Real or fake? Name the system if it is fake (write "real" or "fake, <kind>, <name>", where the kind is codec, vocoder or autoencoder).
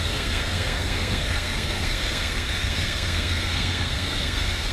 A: fake, codec, SNAC